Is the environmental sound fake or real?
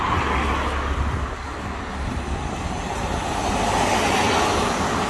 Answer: real